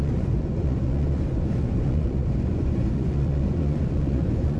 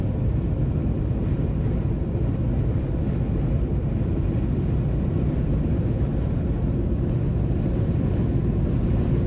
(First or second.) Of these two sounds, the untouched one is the second